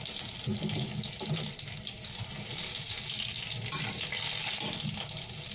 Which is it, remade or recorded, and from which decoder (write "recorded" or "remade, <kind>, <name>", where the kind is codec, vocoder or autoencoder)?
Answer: recorded